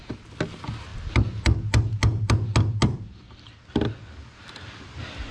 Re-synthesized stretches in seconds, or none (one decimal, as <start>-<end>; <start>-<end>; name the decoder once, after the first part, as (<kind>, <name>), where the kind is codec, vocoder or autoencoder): none